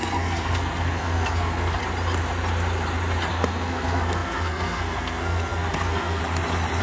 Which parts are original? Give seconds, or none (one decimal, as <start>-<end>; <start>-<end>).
1.8-3.3; 6.2-6.8